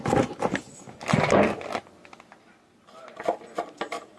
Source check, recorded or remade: recorded